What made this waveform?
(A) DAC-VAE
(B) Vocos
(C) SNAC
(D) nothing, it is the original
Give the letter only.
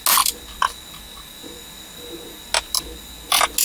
D